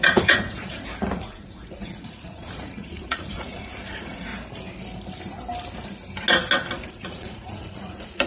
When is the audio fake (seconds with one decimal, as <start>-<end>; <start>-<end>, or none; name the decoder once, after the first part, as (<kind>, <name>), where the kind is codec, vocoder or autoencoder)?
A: 0.0-4.3 (vocoder, Vocos); 6.9-8.3

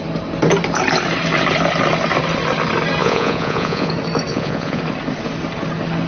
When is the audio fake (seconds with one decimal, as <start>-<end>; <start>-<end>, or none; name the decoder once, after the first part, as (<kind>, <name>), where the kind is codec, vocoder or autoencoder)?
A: 3.0-3.9 (vocoder, Vocos); 4.3-4.8

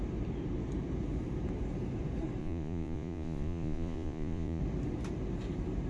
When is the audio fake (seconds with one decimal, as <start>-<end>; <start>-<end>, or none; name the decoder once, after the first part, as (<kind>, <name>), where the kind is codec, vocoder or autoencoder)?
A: 2.4-4.6 (vocoder, Vocos)

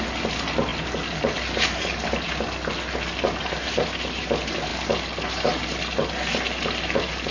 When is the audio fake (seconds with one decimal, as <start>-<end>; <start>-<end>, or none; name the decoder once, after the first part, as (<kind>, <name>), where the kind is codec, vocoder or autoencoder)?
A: none

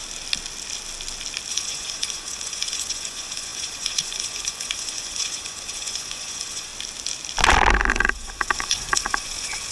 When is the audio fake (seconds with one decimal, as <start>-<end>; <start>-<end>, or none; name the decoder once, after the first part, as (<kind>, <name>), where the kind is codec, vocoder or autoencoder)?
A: 1.5-6.7 (vocoder, Vocos); 7.9-9.7

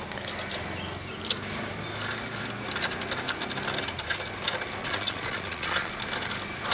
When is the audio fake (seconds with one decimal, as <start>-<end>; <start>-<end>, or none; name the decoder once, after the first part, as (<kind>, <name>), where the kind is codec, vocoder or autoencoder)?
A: 4.8-5.9 (vocoder, Vocos)

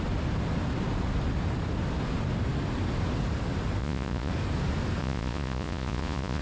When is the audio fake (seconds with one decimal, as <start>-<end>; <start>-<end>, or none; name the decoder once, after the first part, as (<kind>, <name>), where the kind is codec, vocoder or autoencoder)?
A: 3.8-4.3 (vocoder, Vocos); 5.0-6.4